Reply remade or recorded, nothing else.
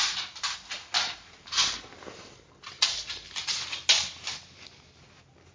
recorded